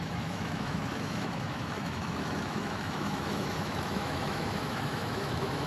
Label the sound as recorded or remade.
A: remade